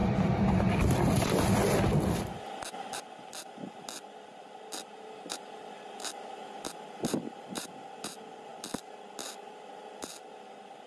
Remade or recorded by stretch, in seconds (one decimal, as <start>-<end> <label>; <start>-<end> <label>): 0.0-10.9 recorded